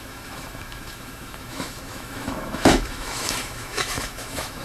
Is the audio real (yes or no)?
no